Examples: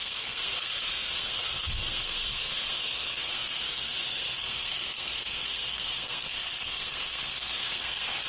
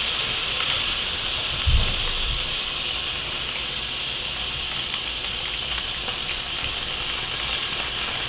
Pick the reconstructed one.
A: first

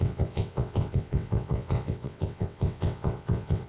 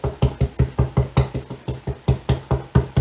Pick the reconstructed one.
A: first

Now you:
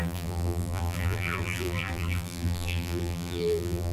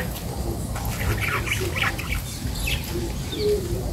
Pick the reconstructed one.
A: first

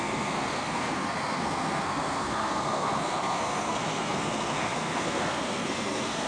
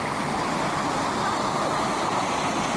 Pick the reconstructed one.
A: first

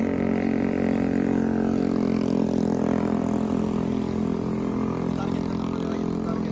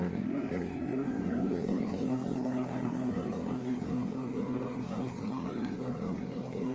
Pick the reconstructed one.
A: second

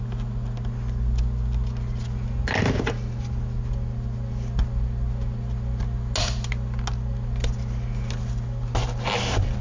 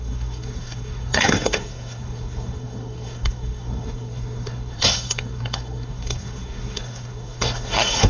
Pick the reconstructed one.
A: second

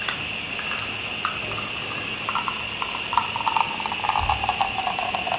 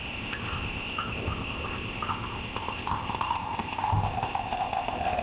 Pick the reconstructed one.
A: second